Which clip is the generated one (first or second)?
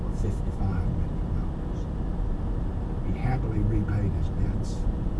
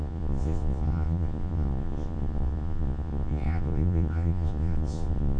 second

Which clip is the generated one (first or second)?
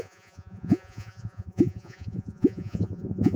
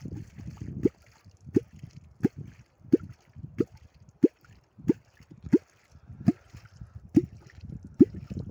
first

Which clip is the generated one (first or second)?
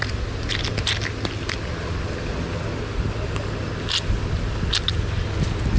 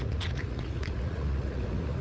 second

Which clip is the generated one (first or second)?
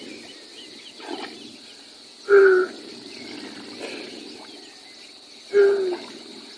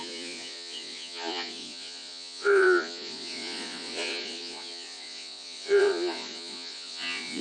second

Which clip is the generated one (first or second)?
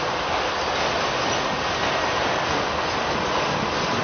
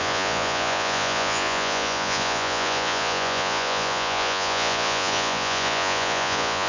second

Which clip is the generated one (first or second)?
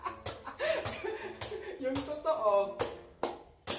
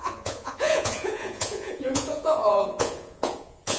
second